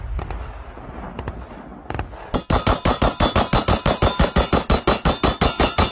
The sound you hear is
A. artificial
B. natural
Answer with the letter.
B